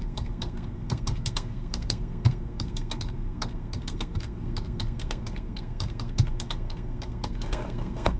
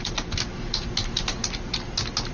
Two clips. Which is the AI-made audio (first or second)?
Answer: first